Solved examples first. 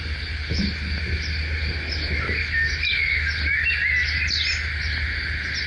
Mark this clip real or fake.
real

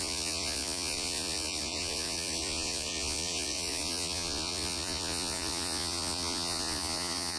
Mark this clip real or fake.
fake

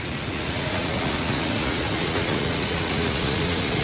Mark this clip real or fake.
fake